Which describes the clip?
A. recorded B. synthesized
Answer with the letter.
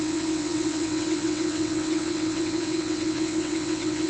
B